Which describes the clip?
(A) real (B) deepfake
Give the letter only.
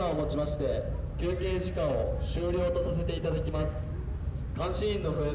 A